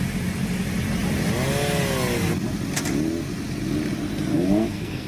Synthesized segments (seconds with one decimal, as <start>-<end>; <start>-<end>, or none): 4.3-5.1